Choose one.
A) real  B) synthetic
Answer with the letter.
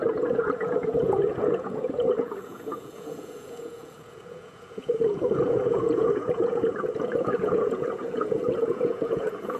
B